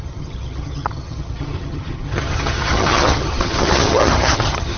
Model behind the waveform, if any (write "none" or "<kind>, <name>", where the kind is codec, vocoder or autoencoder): vocoder, HiFi-GAN